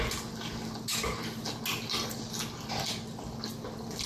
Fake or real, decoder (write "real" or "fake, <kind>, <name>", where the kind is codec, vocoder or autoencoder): real